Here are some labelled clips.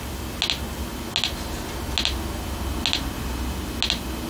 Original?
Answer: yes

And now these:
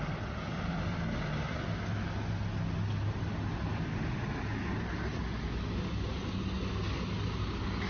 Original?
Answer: yes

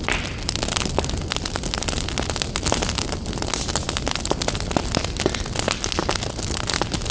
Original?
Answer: yes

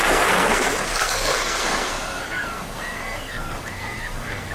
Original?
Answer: no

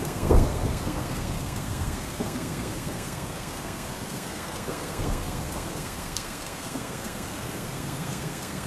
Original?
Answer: no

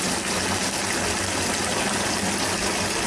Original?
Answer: yes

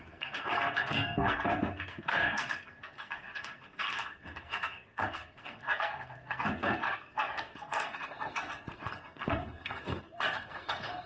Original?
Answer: no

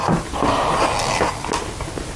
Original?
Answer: yes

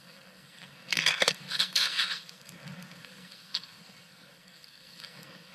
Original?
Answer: no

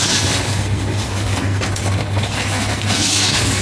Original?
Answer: no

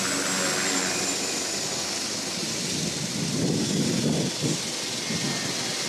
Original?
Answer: yes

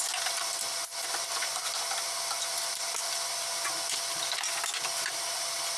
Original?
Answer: yes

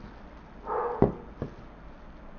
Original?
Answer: yes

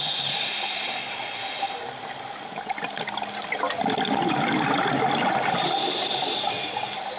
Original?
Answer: yes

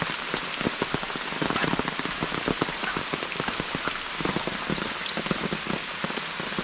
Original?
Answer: yes